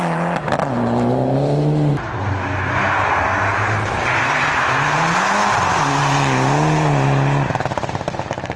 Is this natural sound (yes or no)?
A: yes